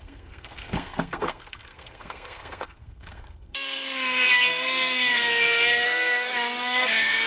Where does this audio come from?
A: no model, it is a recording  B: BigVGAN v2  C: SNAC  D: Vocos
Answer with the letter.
C